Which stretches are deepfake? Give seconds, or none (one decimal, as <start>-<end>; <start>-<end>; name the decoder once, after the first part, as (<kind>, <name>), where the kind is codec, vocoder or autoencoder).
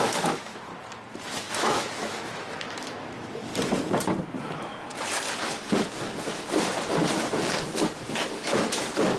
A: 0.0-0.7 (autoencoder, DAC-VAE); 1.3-3.5; 4.4-4.9; 7.5-9.2